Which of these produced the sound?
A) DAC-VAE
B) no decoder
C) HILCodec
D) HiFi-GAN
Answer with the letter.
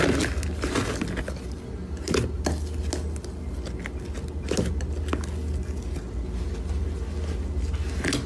B